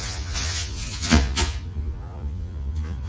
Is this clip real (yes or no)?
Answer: no